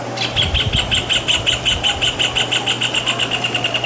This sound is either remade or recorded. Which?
recorded